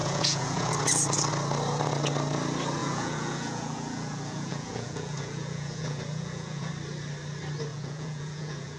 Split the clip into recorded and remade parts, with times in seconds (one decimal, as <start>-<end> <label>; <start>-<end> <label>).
0.0-0.7 remade; 0.7-2.8 recorded; 2.8-6.7 remade; 6.7-7.7 recorded; 7.7-8.8 remade